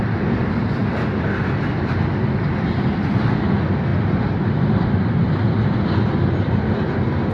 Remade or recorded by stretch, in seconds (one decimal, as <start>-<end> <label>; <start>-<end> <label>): 0.0-7.3 recorded